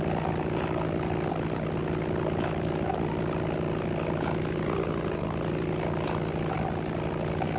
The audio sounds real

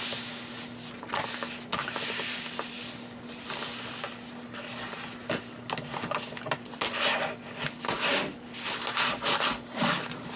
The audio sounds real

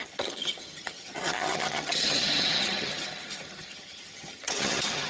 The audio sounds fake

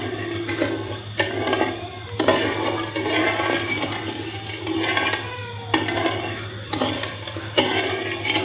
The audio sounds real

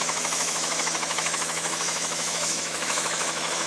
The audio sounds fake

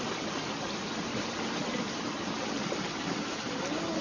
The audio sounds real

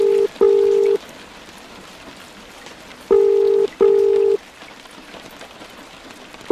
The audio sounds real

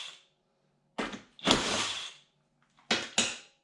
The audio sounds real